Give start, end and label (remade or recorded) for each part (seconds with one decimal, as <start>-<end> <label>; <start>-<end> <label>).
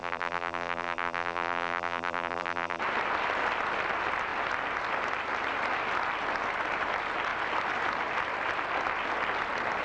0.0-2.8 remade; 2.8-9.8 recorded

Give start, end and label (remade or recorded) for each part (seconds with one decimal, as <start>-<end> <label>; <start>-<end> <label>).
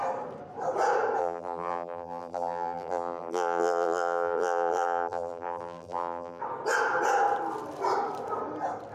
0.0-1.2 recorded; 1.2-6.4 remade; 6.4-8.9 recorded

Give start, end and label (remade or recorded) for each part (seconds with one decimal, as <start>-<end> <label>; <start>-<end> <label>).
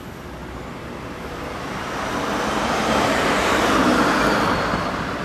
0.0-0.4 recorded; 0.4-3.5 remade; 3.5-5.2 recorded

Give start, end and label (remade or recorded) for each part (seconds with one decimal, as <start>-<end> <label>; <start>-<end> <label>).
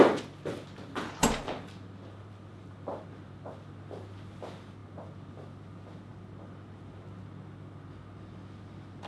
0.0-9.1 recorded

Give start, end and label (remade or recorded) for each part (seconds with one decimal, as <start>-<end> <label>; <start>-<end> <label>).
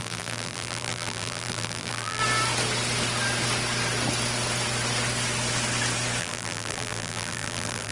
0.0-2.2 remade; 2.2-6.2 recorded; 6.2-7.9 remade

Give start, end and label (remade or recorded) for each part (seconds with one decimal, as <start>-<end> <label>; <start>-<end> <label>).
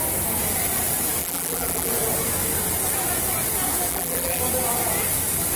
0.0-1.2 recorded; 1.2-1.9 remade; 1.9-3.9 recorded; 3.9-4.4 remade; 4.4-5.6 recorded